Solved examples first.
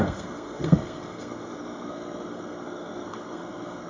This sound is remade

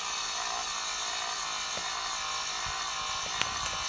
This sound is recorded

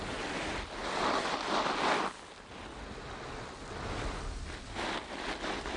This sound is recorded